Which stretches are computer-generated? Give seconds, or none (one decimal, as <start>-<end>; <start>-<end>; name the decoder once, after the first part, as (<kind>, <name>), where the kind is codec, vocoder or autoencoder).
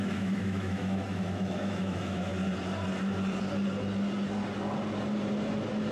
0.0-2.3 (autoencoder, DAC-VAE)